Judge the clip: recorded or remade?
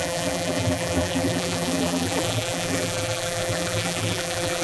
remade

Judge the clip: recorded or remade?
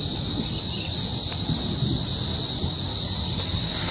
recorded